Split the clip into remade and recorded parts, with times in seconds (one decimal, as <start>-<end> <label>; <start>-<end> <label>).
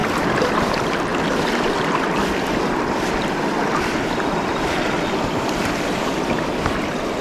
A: 0.0-1.1 remade; 1.1-5.4 recorded; 5.4-7.2 remade